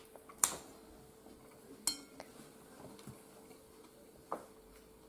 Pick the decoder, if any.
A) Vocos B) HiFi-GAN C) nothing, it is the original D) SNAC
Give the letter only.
C